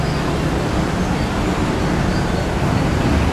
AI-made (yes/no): no